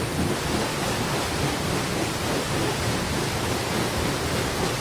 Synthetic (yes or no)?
no